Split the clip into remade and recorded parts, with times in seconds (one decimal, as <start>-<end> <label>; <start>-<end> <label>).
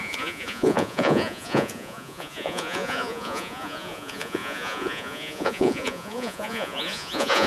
0.0-7.5 remade